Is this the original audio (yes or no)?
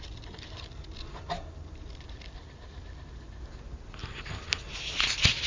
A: yes